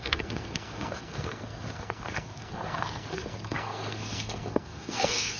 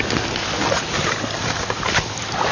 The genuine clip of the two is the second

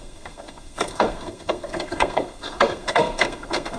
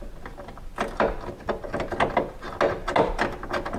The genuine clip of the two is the second